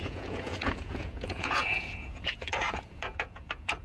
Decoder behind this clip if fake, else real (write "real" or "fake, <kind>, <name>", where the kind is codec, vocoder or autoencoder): fake, vocoder, Vocos